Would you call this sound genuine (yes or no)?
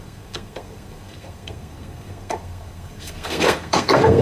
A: no